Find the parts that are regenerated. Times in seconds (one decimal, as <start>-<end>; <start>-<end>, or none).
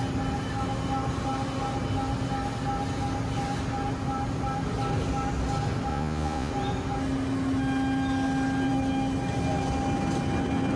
5.9-6.5